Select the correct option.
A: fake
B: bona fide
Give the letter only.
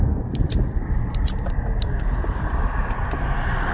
B